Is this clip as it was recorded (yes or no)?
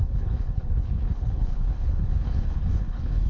no